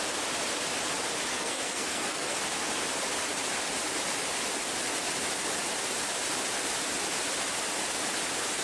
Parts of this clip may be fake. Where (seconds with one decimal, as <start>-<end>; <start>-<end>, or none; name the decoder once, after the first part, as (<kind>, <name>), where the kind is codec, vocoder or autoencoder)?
1.3-2.4 (codec, SNAC)